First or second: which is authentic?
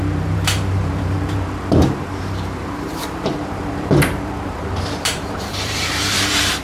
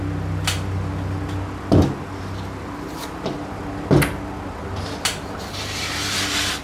second